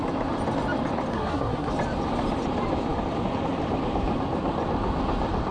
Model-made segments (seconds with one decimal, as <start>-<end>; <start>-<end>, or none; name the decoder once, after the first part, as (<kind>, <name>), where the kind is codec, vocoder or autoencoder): 1.1-1.7 (codec, SNAC)